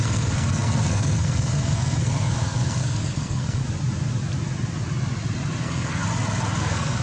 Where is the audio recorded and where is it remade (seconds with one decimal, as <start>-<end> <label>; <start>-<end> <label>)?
0.0-3.6 remade; 3.6-5.6 recorded; 5.6-6.0 remade; 6.0-6.6 recorded; 6.6-7.0 remade